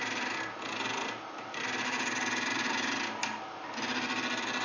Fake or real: real